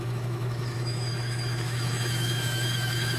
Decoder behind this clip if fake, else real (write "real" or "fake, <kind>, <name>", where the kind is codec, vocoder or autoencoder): fake, autoencoder, DAC-VAE